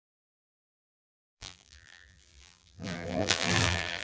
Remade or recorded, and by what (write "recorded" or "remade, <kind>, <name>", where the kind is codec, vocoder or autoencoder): remade, vocoder, BigVGAN v2